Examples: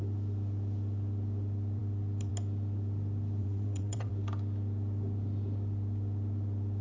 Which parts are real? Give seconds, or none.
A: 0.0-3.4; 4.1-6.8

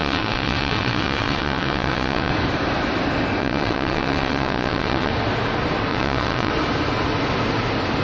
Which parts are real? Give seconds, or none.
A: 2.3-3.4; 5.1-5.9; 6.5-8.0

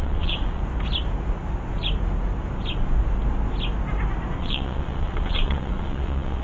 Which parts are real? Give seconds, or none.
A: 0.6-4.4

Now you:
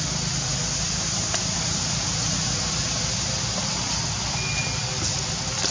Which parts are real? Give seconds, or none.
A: 0.0-5.7

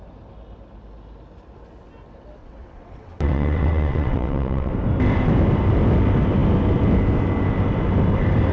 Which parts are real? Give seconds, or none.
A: 0.0-2.4; 4.7-8.5

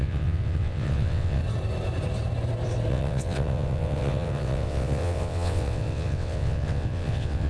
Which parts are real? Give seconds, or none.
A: 1.4-2.9